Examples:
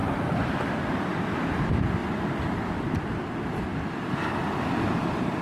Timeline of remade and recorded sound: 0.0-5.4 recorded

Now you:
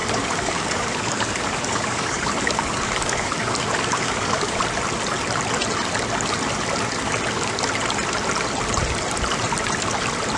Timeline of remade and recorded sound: 0.0-4.6 remade; 4.6-10.4 recorded

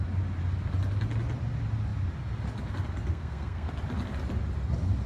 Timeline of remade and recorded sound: 0.0-3.1 recorded; 3.1-3.7 remade; 3.7-5.1 recorded

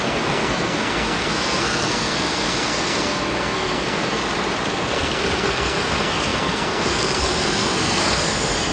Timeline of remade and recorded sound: 0.0-4.2 remade; 4.2-4.7 recorded; 4.7-8.7 remade

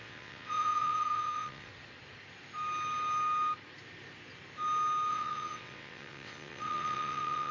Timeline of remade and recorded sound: 0.0-1.7 remade; 1.7-5.1 recorded; 5.1-7.5 remade

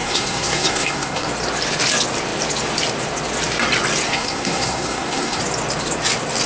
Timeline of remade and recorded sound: 0.0-1.3 remade; 1.3-4.1 recorded; 4.1-5.4 remade; 5.4-6.5 recorded